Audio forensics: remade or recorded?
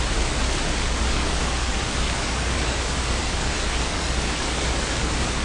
remade